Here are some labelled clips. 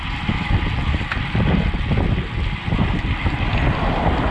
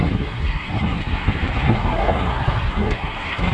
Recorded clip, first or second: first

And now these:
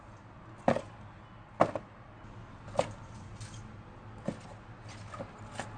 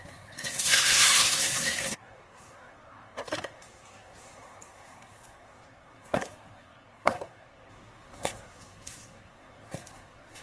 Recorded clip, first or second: first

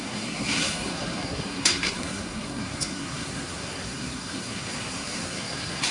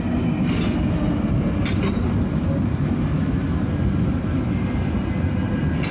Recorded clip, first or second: second